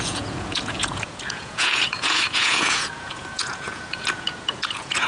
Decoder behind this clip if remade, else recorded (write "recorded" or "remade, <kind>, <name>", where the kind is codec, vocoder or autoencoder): remade, vocoder, Vocos